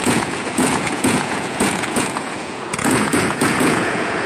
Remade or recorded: remade